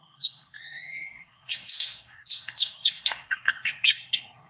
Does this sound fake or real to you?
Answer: fake